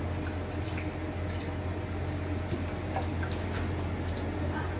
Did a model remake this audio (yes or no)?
no